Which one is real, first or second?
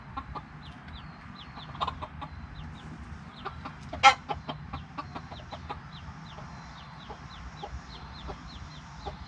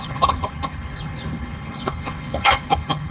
first